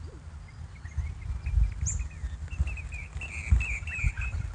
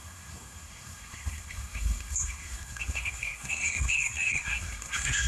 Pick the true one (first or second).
first